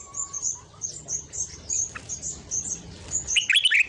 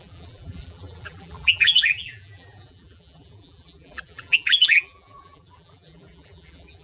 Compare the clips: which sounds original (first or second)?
first